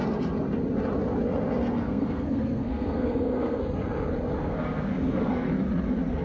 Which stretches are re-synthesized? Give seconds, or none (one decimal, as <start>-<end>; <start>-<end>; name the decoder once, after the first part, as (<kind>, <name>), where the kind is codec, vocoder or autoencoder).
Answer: 1.8-3.6 (codec, SNAC); 4.4-5.5